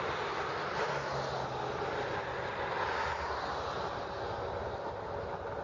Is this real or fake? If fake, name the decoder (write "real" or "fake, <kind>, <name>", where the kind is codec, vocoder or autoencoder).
real